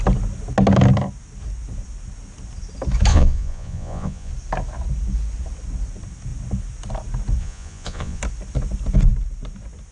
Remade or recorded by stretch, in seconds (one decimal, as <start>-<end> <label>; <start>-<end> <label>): 0.0-3.1 recorded; 3.1-4.3 remade; 4.3-7.4 recorded; 7.4-8.2 remade; 8.2-9.9 recorded